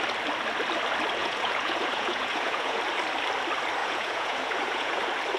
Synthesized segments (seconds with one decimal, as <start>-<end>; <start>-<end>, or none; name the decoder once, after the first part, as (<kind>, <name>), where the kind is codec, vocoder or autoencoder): 1.2-2.8 (vocoder, Vocos); 3.8-5.0